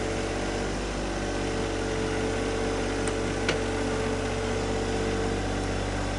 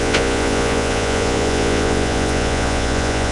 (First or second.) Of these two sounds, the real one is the first